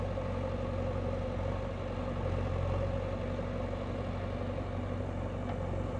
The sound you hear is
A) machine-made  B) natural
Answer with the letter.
B